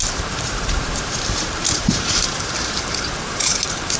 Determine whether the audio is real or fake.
fake